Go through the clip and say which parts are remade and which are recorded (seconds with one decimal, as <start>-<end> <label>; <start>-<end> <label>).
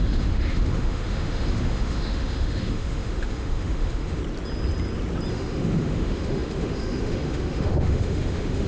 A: 0.0-4.2 remade; 4.2-5.3 recorded; 5.3-8.7 remade